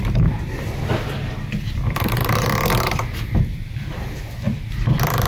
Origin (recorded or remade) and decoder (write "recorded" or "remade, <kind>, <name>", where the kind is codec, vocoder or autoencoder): recorded